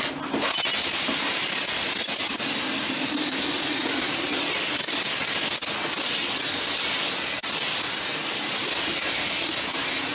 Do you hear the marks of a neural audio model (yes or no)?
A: no